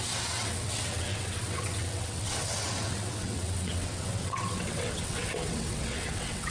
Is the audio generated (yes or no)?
yes